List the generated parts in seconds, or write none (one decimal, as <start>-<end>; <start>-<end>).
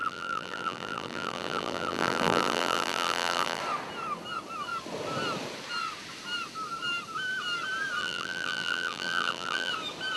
0.0-3.6; 8.0-9.7